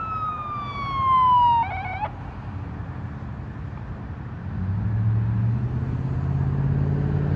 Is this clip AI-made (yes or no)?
no